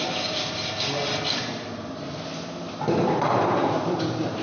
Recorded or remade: recorded